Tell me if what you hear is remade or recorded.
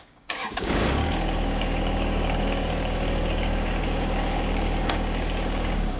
remade